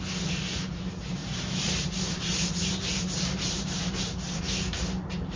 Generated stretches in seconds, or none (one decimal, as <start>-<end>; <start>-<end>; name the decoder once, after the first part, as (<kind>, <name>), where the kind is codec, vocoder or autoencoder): 1.2-4.4 (vocoder, BigVGAN v2)